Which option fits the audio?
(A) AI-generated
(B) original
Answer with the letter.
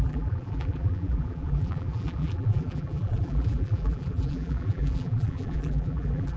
A